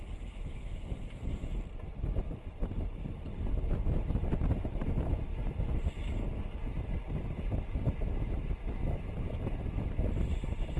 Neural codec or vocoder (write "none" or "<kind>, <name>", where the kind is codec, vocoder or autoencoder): vocoder, BigVGAN v2